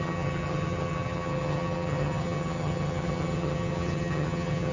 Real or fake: fake